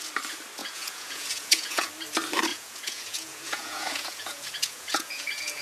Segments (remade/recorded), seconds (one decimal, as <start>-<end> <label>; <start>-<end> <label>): 0.0-0.6 recorded; 0.6-1.9 remade; 1.9-2.5 recorded; 2.5-5.6 remade